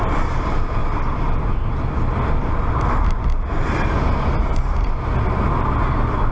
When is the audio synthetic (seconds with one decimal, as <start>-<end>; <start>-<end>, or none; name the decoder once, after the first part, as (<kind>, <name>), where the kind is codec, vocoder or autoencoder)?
none